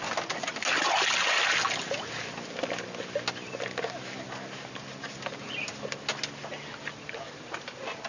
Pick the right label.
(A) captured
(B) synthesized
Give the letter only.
A